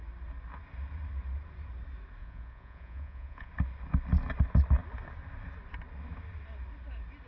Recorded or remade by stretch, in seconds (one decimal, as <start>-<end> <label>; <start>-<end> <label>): 0.0-2.2 recorded; 2.2-3.5 remade; 3.5-7.3 recorded